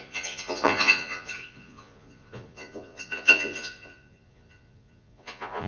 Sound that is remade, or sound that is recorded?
remade